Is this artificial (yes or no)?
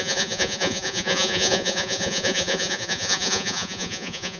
yes